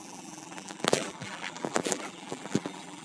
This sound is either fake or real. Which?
fake